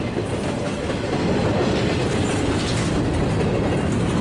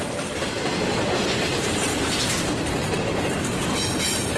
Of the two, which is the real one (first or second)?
first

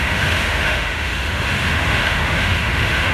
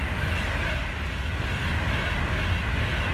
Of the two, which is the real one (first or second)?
second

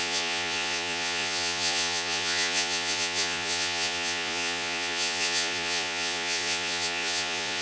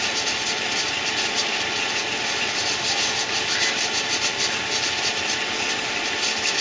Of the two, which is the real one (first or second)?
second